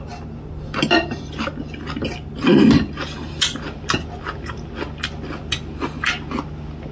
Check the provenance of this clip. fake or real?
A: real